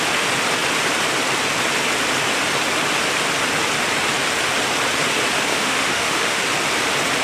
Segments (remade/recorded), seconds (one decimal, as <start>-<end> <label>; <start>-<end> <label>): 0.0-5.5 recorded; 5.5-6.4 remade; 6.4-7.2 recorded